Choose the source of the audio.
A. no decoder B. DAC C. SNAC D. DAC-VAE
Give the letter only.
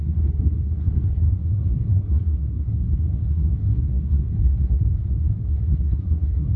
C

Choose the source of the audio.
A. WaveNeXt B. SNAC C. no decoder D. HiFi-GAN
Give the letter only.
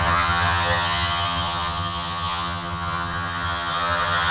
D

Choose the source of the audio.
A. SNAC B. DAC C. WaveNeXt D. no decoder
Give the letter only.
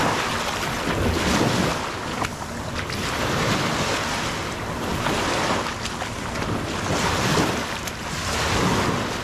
D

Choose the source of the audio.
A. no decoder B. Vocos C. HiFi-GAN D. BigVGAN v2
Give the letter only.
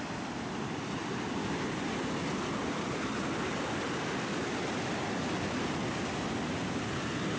D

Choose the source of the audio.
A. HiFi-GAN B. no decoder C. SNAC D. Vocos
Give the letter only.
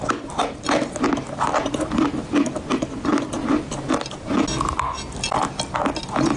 B